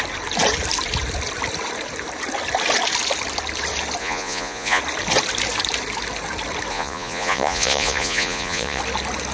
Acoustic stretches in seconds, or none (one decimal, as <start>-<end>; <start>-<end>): 0.0-4.0; 4.8-6.7; 8.8-9.3